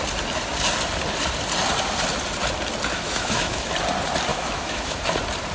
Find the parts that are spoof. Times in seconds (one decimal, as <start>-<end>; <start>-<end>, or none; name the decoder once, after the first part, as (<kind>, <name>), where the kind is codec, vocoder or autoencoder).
2.9-3.7 (autoencoder, DAC-VAE); 4.3-5.0